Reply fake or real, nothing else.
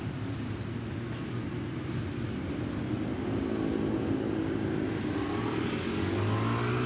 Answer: real